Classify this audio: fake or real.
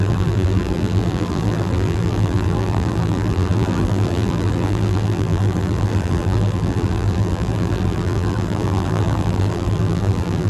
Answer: fake